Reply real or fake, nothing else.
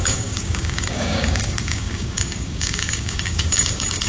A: fake